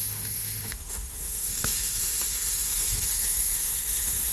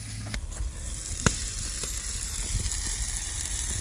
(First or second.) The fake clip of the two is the first